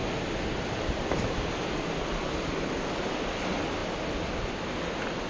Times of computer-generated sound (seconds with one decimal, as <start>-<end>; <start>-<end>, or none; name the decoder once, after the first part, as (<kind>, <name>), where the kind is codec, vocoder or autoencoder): none